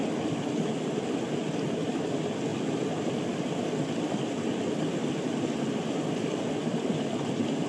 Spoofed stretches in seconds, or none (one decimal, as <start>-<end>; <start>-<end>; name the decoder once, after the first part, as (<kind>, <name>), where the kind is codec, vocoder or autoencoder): none